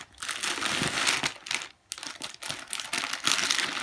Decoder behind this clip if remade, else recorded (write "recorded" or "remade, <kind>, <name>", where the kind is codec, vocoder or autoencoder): recorded